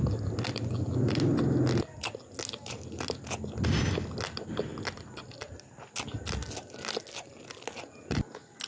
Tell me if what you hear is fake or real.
real